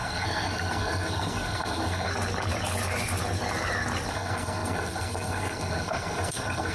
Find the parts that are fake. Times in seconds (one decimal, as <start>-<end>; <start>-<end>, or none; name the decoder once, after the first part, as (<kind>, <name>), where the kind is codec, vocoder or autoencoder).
0.0-2.1 (codec, SNAC); 4.1-6.7